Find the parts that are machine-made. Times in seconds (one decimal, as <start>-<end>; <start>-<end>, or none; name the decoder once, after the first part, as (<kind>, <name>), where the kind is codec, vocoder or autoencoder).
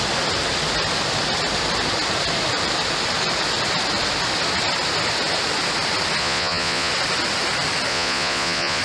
6.2-6.9 (vocoder, Vocos); 7.9-8.8